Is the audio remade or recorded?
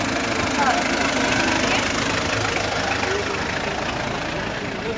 recorded